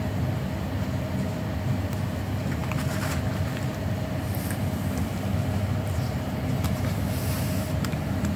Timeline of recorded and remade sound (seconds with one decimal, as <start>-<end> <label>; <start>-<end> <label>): 0.0-8.4 recorded